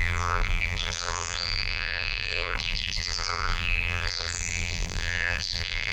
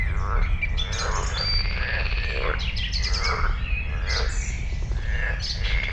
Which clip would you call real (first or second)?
second